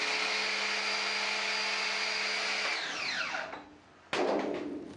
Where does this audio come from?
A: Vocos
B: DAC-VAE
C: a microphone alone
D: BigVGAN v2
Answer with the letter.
C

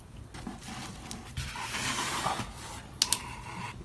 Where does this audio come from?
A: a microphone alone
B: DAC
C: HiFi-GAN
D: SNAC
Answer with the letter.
A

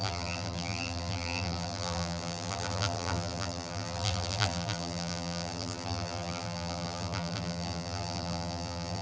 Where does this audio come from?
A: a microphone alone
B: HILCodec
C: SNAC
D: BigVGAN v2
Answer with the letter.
D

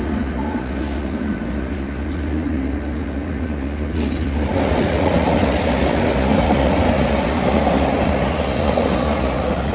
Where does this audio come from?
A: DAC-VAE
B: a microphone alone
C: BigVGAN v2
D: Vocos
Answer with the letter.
D